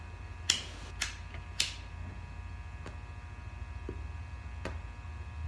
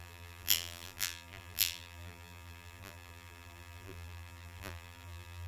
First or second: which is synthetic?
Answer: second